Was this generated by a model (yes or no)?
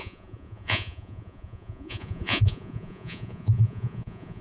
yes